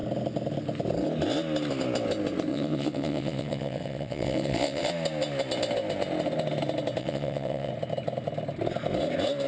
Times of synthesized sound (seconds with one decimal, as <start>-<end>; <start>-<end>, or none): 2.5-4.9; 7.0-7.7